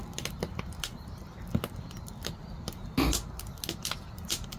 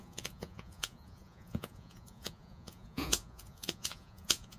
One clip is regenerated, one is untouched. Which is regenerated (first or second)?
second